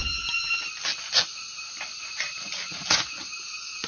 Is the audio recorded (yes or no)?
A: yes